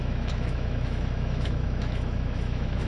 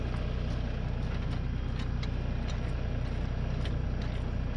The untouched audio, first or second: second